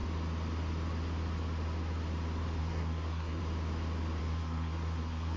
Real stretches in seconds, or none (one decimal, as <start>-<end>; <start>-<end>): 0.0-2.6; 3.4-4.2